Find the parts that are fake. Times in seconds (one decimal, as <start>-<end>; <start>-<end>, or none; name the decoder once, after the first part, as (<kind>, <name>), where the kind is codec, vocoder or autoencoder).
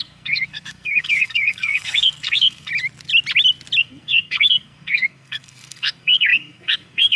0.0-2.7 (codec, SNAC); 3.8-7.2